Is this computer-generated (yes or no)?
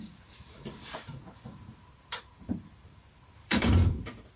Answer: yes